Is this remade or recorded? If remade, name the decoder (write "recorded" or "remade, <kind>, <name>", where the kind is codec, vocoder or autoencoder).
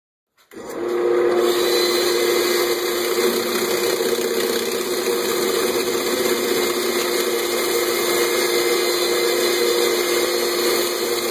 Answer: recorded